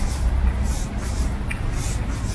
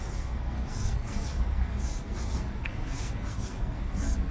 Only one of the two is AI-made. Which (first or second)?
second